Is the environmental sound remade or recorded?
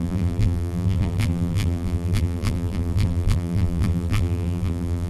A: remade